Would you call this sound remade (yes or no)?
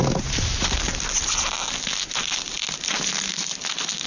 no